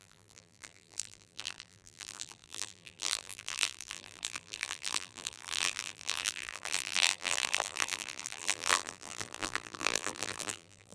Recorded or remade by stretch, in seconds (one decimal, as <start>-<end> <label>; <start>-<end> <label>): 0.0-10.9 remade